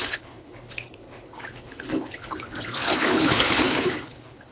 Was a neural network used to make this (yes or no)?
yes